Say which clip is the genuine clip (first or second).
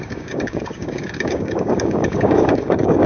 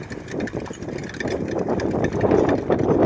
second